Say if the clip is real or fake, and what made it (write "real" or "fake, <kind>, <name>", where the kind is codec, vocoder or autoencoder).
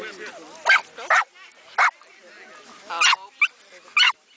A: real